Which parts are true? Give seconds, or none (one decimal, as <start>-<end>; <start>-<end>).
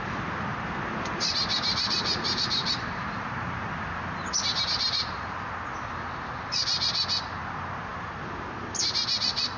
0.0-0.5; 5.5-9.6